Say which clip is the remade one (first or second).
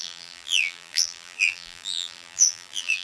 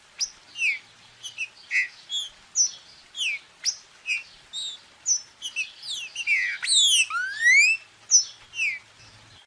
first